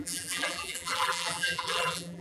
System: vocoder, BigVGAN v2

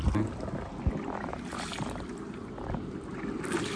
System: none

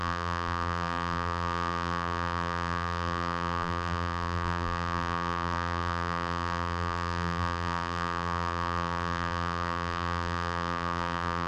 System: vocoder, BigVGAN v2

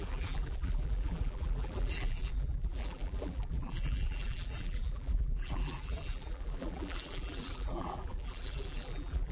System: vocoder, BigVGAN v2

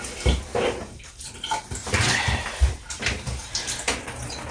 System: vocoder, BigVGAN v2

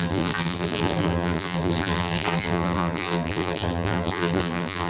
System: vocoder, BigVGAN v2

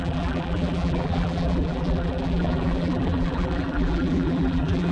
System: vocoder, BigVGAN v2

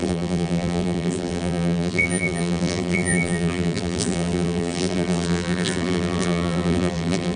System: vocoder, BigVGAN v2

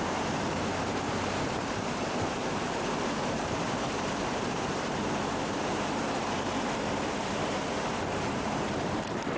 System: vocoder, BigVGAN v2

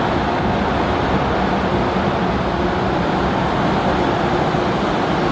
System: none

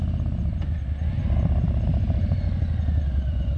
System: none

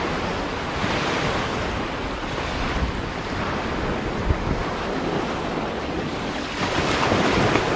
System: vocoder, BigVGAN v2